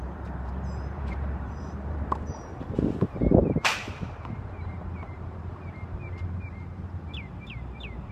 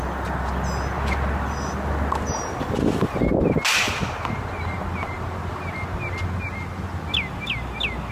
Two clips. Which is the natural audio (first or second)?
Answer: second